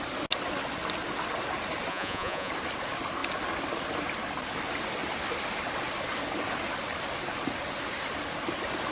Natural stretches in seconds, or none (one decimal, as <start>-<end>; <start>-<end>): 0.0-1.9; 2.5-8.9